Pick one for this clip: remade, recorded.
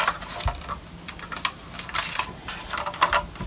recorded